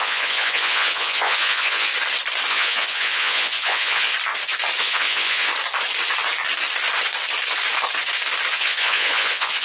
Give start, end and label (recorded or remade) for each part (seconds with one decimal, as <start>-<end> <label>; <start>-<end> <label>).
0.0-1.9 remade; 1.9-2.5 recorded; 2.5-4.1 remade; 4.1-4.8 recorded; 4.8-5.5 remade; 5.5-8.5 recorded; 8.5-9.6 remade